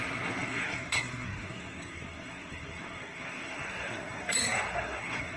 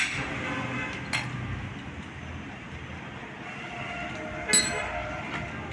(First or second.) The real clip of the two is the second